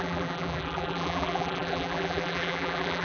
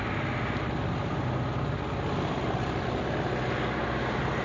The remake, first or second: first